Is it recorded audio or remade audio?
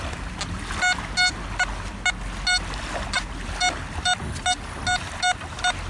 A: recorded